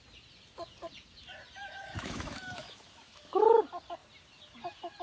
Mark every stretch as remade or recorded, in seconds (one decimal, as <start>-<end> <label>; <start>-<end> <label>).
0.0-1.6 recorded; 1.6-3.4 remade; 3.4-5.0 recorded